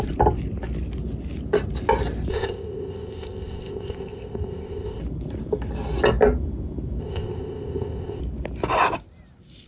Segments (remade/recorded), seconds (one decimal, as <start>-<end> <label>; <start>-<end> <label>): 0.0-2.3 recorded; 2.3-5.0 remade; 5.0-7.0 recorded; 7.0-8.2 remade; 8.2-9.7 recorded